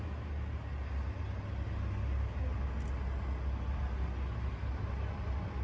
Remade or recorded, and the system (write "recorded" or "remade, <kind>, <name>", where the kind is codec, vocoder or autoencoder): recorded